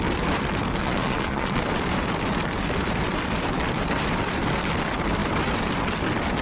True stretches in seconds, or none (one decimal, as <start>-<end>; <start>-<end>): 0.0-0.8; 1.6-6.4